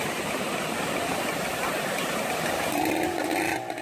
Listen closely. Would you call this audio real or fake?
real